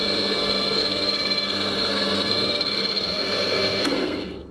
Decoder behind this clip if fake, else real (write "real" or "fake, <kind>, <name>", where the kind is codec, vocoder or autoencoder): fake, codec, SNAC